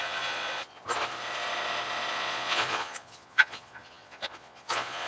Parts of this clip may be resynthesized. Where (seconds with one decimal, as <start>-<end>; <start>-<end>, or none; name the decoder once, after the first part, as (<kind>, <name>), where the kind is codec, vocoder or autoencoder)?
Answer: 0.0-0.8 (vocoder, Vocos); 2.1-5.1